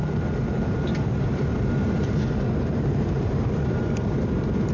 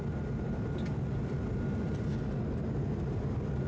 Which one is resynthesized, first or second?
first